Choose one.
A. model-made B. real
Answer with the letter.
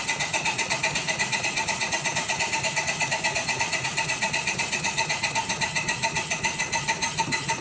A